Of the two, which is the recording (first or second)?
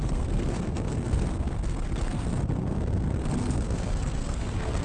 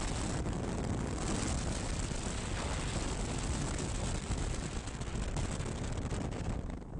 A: second